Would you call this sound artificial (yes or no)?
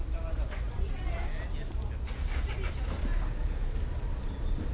no